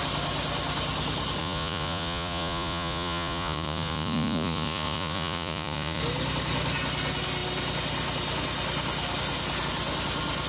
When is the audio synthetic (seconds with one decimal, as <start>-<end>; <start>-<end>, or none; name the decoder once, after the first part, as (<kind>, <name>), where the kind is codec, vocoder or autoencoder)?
1.4-6.0 (vocoder, Vocos)